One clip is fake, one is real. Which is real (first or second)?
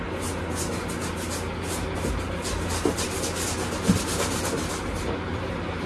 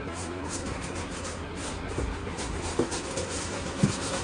first